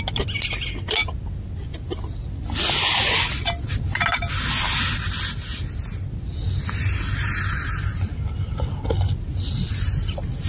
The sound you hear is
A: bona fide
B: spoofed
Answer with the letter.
A